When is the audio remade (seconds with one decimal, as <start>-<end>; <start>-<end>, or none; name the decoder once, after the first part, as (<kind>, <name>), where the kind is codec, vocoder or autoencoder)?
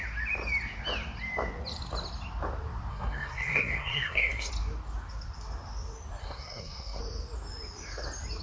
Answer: 2.9-4.5 (codec, SNAC); 6.2-7.0